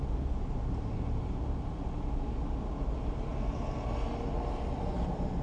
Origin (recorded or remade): recorded